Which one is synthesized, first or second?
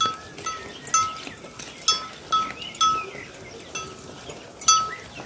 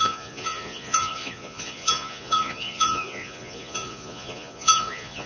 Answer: second